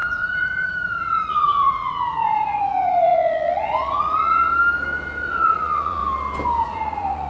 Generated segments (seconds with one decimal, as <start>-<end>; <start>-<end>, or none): 0.0-4.5; 5.3-6.0; 6.6-7.3